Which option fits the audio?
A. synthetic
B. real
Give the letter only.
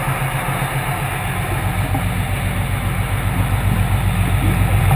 B